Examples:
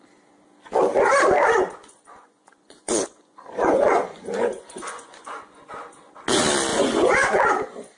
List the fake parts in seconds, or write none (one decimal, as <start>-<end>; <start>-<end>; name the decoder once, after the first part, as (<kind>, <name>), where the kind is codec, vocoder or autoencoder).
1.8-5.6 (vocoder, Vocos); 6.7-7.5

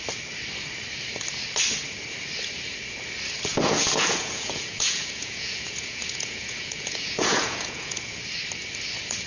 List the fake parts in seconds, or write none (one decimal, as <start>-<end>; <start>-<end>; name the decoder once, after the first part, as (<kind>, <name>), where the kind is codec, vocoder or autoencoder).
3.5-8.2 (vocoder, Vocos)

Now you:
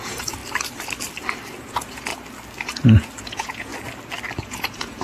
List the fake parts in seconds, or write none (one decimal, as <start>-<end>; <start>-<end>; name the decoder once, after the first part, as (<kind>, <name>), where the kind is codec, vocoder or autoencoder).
0.0-0.4 (vocoder, Vocos); 1.6-2.1; 3.2-3.7; 4.4-5.0